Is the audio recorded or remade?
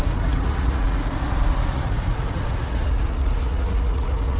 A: remade